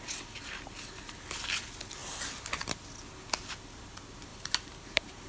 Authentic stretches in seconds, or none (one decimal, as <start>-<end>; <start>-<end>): 0.0-4.3